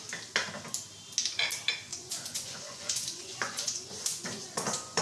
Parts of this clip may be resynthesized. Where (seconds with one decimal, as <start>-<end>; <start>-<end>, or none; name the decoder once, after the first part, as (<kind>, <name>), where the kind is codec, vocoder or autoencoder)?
1.9-5.0 (vocoder, Vocos)